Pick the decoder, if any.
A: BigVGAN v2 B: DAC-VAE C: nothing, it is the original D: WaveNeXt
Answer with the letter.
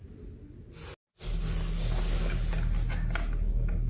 C